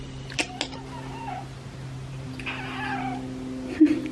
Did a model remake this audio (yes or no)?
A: no